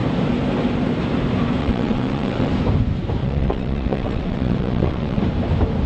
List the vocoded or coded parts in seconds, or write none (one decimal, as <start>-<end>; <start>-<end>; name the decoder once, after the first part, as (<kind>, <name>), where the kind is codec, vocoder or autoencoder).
1.6-2.5 (vocoder, WaveNeXt); 3.2-5.2